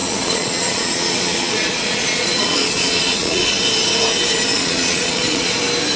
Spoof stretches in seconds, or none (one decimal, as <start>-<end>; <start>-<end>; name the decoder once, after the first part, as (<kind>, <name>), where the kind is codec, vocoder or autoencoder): 0.0-3.6 (vocoder, Vocos); 4.5-5.5